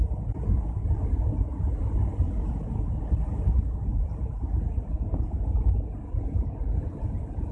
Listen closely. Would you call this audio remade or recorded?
recorded